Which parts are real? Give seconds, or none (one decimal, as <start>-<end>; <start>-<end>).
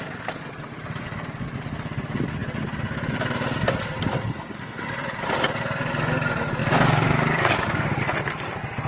0.0-6.6; 8.0-8.9